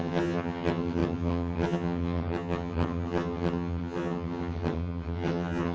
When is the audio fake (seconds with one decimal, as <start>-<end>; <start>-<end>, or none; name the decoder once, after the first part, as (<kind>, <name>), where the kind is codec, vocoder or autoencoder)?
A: 0.0-5.7 (vocoder, HiFi-GAN)